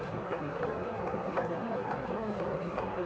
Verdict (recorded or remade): remade